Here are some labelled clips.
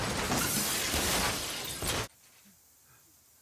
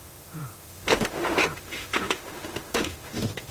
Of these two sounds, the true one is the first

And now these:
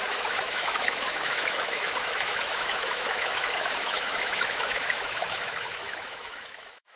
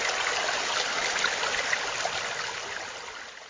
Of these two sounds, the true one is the second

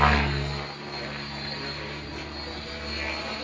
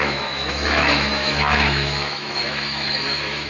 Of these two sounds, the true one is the first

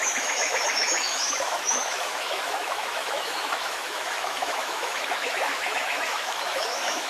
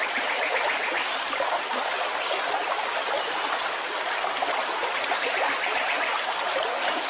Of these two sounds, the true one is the second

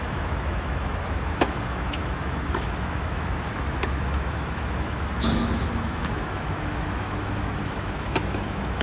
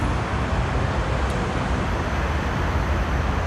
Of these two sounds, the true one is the second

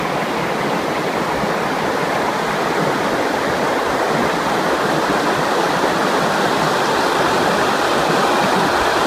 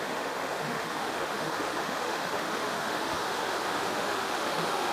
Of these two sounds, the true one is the first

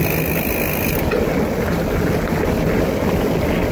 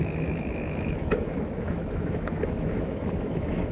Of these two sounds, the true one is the first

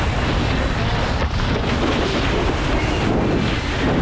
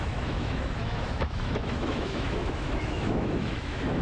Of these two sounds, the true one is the first